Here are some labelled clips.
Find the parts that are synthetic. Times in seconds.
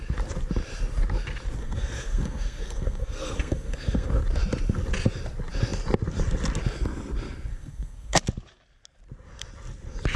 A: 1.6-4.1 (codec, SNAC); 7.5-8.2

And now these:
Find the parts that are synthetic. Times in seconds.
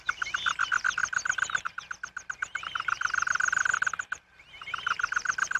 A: none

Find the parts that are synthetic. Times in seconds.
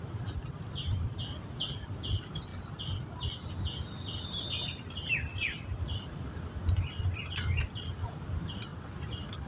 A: none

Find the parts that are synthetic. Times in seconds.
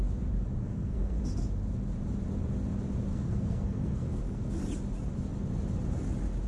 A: 0.6-1.2 (codec, SNAC); 3.1-4.5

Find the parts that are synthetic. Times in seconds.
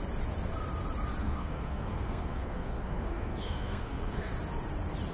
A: 1.2-4.3 (codec, SNAC)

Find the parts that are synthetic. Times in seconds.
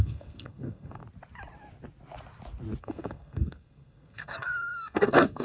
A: 0.0-1.0 (codec, SNAC); 2.8-5.4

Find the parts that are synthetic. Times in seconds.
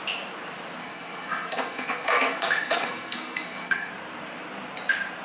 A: 0.8-3.9 (codec, SNAC)